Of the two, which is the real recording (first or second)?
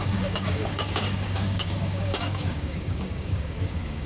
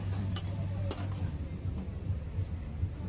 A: second